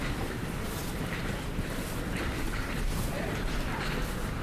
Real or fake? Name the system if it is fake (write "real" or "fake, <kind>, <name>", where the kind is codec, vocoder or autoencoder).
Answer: fake, vocoder, BigVGAN v2